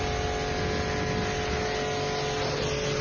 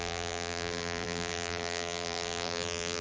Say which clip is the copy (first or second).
second